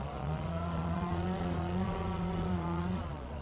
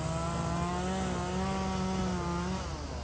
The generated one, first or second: first